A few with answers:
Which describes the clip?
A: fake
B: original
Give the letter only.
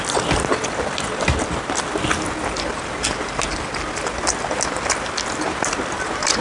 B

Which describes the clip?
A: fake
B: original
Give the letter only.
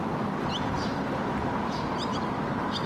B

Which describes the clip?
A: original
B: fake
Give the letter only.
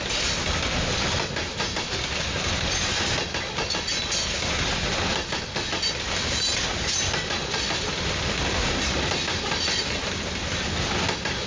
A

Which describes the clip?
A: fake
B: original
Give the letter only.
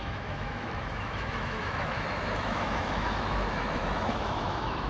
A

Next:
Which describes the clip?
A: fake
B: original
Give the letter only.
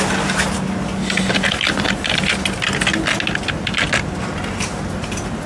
B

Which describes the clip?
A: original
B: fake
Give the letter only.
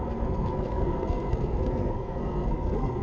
B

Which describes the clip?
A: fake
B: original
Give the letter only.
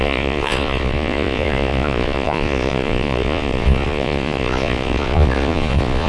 A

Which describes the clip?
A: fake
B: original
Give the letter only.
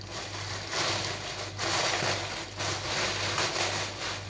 B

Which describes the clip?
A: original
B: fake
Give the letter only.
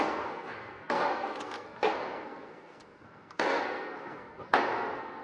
B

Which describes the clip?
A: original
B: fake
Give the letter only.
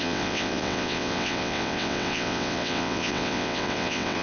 B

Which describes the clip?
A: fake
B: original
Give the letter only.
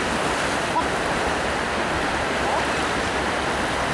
B